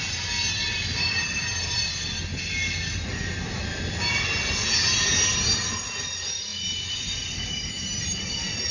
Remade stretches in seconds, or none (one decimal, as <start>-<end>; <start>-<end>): none

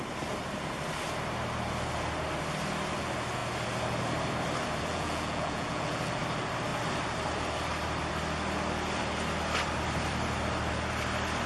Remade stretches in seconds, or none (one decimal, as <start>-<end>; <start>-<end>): 4.9-6.1

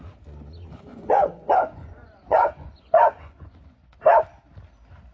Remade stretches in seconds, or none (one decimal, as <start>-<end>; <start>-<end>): 0.9-4.0

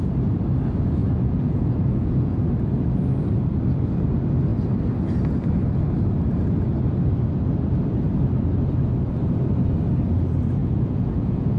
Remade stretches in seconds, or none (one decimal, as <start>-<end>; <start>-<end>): 1.0-2.4; 10.6-11.6